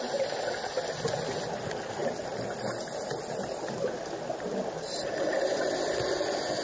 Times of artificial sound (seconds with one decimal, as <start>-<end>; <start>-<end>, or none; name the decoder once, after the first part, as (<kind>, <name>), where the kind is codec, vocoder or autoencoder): none